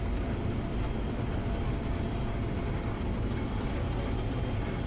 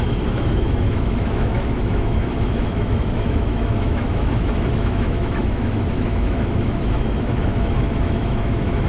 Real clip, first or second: first